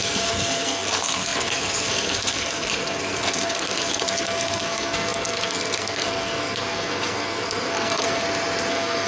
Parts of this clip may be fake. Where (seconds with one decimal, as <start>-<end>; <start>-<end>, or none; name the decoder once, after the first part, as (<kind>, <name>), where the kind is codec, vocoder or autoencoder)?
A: 0.0-8.2 (codec, SNAC); 8.7-9.1